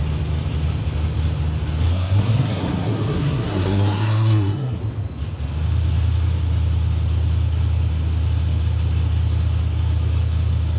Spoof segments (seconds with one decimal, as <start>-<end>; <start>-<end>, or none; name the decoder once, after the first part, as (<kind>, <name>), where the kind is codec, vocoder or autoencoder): 1.9-4.8 (codec, SNAC)